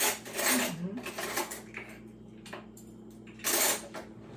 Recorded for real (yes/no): yes